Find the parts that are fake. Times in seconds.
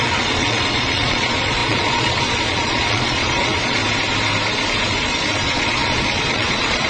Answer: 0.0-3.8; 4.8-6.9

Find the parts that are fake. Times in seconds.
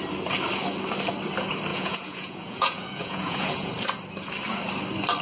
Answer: 1.7-3.7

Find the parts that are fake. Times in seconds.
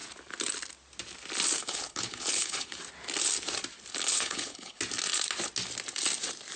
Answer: 1.6-2.8; 4.1-4.8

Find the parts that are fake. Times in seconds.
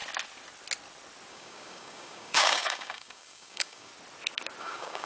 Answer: 1.3-3.9; 4.6-5.1